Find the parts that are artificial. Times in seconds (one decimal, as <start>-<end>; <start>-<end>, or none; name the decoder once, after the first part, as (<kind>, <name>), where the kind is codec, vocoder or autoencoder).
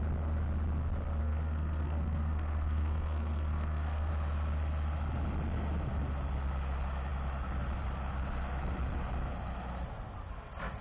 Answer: 1.2-4.1 (codec, SNAC)